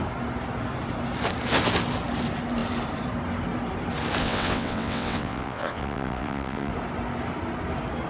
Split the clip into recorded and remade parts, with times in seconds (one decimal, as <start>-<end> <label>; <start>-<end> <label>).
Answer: 0.0-4.2 recorded; 4.2-6.7 remade; 6.7-8.1 recorded